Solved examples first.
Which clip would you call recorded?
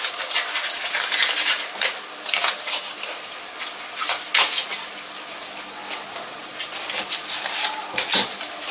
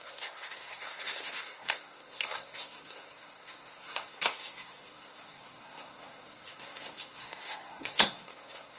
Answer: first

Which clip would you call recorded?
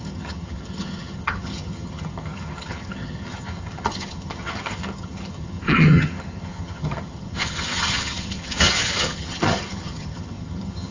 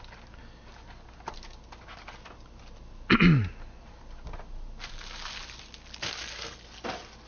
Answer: second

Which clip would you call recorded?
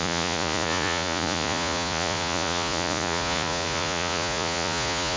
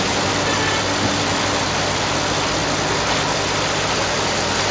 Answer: second